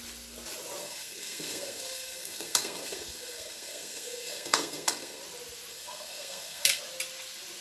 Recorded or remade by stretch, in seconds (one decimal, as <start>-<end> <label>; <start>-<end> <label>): 0.0-0.8 recorded; 0.8-5.2 remade; 5.2-5.7 recorded; 5.7-6.8 remade; 6.8-7.6 recorded